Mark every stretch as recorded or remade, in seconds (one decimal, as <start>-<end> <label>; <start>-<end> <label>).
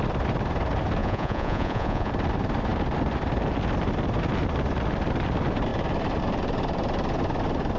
0.0-1.0 recorded; 1.0-2.1 remade; 2.1-7.8 recorded